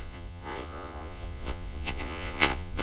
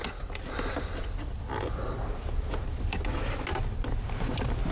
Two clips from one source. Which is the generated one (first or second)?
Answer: first